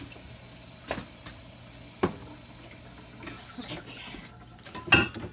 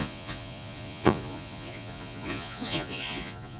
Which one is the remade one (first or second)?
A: second